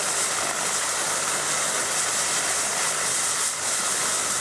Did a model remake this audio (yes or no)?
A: no